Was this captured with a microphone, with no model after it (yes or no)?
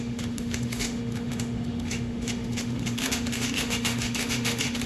no